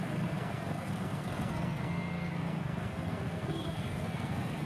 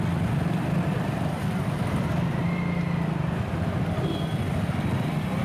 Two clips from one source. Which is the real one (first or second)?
second